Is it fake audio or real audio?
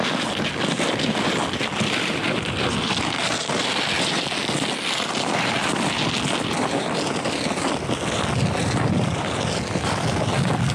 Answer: real